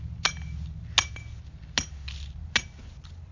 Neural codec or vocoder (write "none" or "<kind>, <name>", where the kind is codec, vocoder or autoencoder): none